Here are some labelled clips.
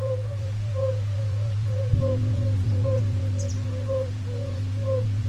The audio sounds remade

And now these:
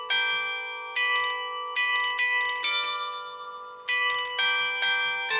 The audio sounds recorded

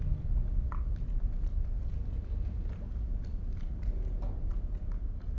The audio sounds recorded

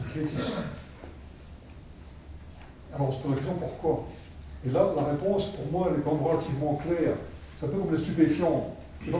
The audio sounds recorded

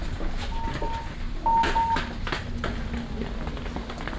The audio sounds recorded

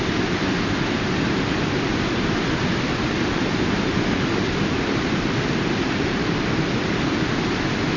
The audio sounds recorded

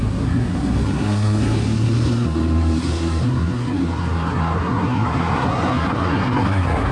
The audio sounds remade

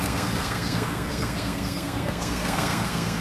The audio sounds remade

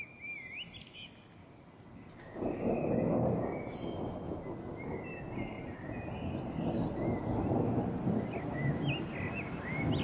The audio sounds recorded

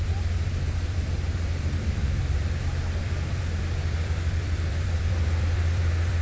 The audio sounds remade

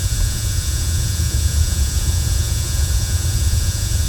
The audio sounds remade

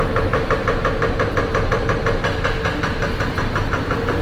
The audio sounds remade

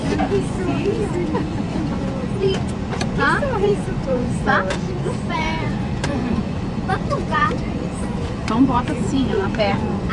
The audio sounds remade